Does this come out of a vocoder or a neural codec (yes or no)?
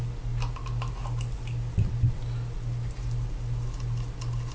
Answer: no